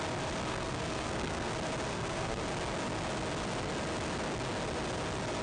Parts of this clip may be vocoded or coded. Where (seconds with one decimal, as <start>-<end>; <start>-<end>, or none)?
0.5-1.5; 1.9-2.4